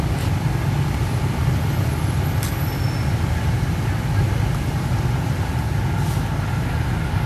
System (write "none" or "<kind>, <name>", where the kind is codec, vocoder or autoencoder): none